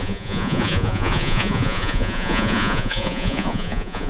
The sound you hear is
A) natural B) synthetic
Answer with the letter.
B